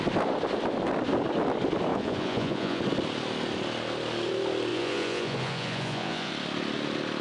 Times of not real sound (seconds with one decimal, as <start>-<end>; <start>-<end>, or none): 1.9-2.8; 4.7-6.3